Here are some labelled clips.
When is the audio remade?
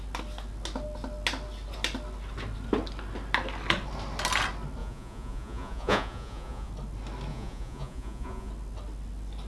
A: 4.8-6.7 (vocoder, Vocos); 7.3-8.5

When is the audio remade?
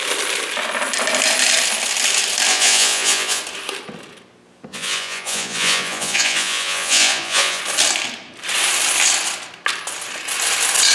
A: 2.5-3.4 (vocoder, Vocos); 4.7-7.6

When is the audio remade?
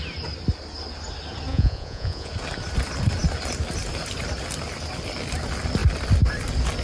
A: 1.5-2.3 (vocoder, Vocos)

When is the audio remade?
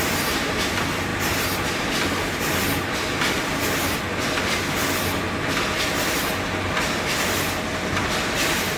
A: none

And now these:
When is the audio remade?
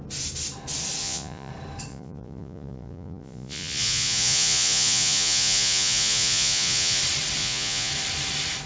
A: 1.0-1.5 (vocoder, Vocos); 1.9-7.0; 7.4-7.9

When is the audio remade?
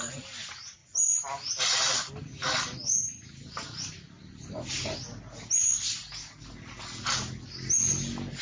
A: none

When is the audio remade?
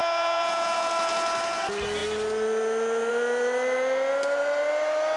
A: 0.0-0.9 (vocoder, Vocos)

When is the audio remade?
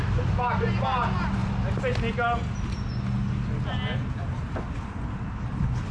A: none